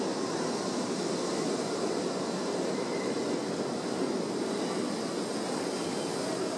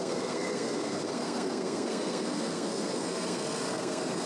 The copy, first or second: second